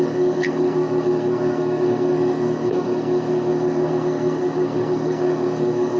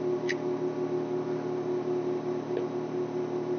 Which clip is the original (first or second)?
second